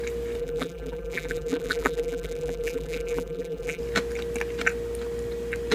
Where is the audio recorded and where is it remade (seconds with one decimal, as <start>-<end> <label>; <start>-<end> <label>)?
0.0-0.4 recorded; 0.4-3.8 remade; 3.8-5.7 recorded